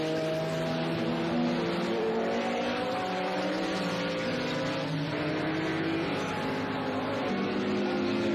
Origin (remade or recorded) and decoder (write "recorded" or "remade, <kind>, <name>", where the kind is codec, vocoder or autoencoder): recorded